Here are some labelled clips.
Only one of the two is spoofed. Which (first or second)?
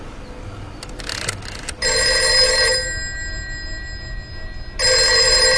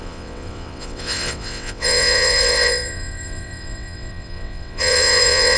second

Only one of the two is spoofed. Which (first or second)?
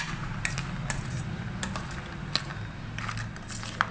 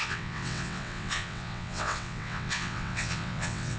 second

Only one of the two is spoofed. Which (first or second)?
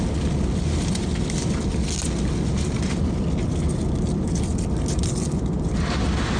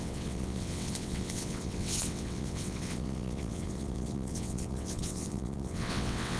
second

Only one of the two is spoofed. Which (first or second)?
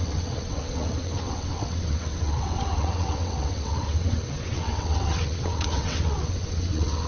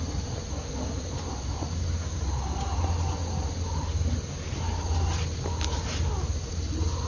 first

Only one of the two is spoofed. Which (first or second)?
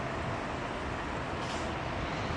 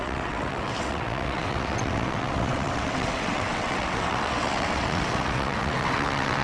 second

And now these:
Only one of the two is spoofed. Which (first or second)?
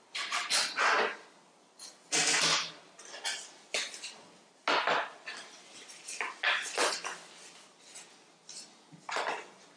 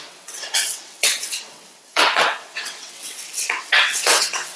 second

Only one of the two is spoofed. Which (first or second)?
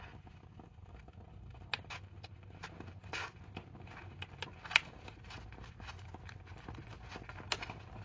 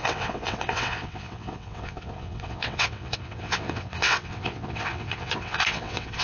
second